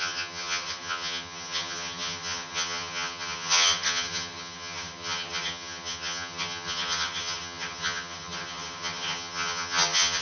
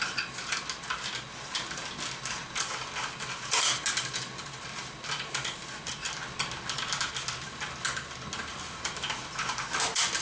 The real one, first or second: second